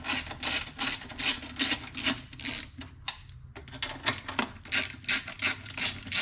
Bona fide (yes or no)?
yes